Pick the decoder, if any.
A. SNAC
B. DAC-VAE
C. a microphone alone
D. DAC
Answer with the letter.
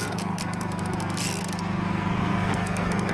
A